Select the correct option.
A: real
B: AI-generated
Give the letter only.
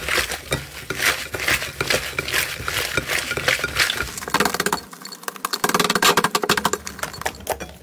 A